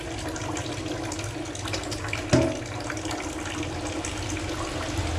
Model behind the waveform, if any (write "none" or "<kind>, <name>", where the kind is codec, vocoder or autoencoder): none